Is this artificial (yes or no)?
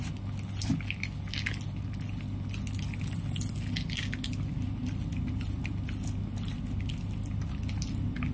no